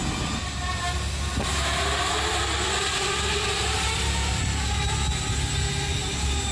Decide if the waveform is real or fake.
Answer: real